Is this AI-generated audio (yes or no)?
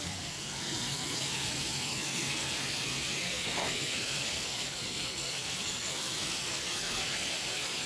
yes